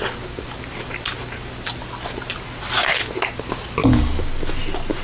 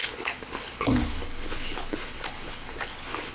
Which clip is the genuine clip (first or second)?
first